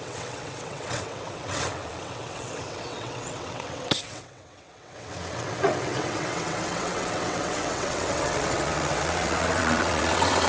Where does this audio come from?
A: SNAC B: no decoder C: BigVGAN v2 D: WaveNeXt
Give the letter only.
D